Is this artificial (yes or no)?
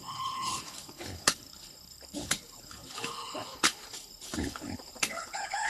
yes